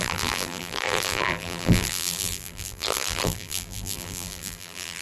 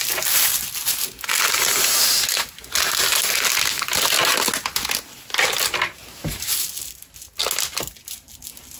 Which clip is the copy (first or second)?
first